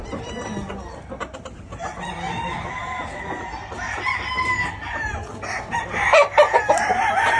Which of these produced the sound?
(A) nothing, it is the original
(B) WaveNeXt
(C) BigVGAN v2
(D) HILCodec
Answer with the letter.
A